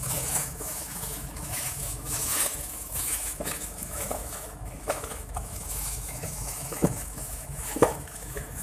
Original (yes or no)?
no